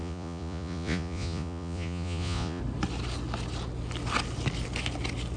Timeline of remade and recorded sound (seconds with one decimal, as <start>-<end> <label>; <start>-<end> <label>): 0.0-2.6 remade; 2.6-5.4 recorded